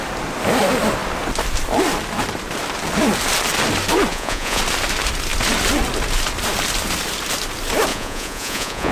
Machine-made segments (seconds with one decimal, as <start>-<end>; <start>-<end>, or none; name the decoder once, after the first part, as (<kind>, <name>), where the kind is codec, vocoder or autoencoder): 4.1-4.6 (vocoder, Vocos); 7.9-8.9